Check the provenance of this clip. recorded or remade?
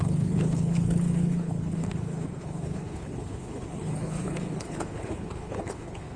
remade